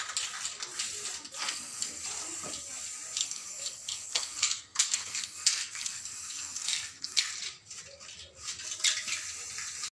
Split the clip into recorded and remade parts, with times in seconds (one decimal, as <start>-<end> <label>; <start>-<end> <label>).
0.0-1.4 recorded; 1.4-2.0 remade; 2.0-3.2 recorded; 3.2-7.3 remade; 7.3-10.0 recorded